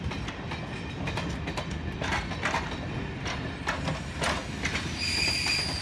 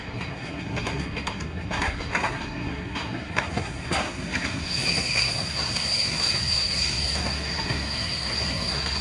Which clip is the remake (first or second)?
second